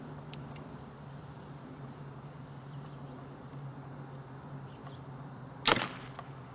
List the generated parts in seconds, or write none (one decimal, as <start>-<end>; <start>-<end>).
none